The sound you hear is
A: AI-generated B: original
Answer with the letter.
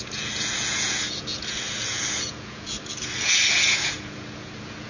A